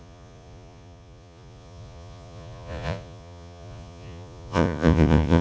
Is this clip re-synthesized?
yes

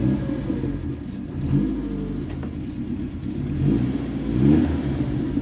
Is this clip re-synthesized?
no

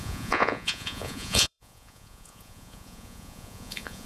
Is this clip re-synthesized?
yes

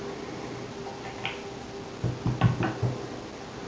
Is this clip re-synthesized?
no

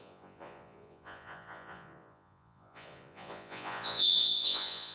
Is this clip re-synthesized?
yes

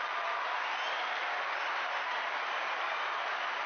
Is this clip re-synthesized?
no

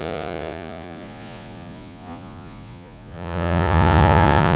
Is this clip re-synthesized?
yes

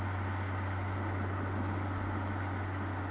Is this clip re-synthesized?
no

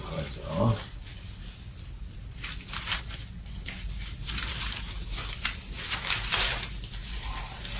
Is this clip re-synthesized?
no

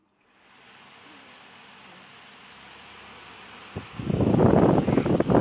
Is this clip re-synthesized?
no